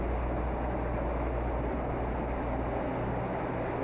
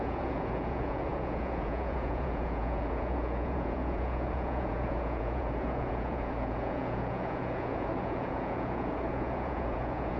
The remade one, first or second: second